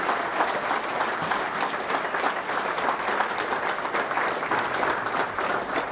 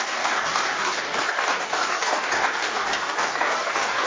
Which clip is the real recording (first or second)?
first